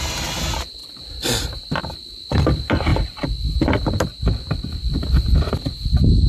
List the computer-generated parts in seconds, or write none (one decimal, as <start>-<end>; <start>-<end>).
none